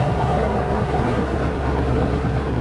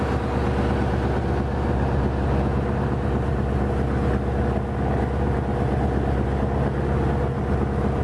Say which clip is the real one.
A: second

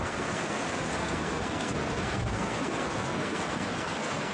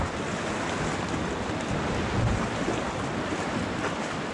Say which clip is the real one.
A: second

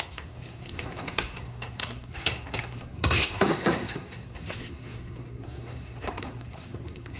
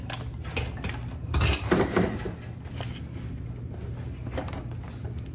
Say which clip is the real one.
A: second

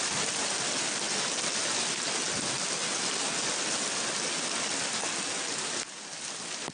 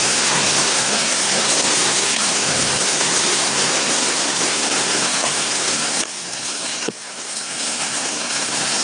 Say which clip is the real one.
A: first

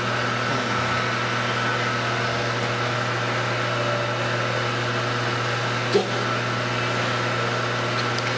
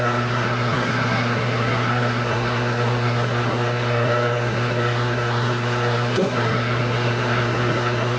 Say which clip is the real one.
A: first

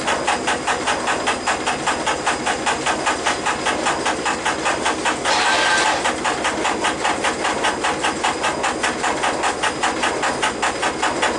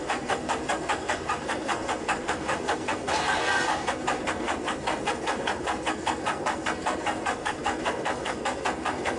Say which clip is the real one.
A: first